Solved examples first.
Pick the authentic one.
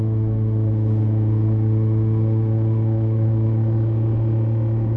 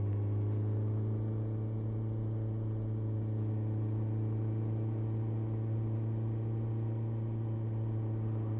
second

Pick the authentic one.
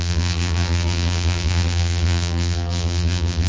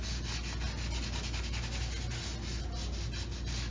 second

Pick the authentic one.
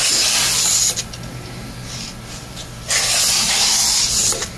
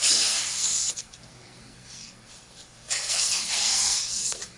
first